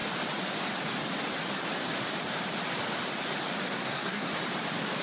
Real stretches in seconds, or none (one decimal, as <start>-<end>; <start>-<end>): 0.0-3.7; 4.3-5.0